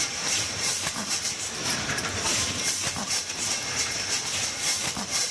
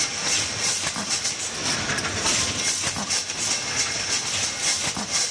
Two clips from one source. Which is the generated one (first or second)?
first